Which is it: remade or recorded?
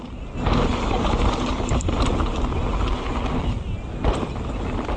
recorded